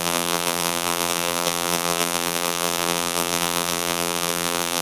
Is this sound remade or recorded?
remade